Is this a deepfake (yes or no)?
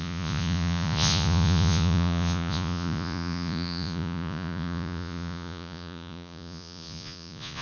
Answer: yes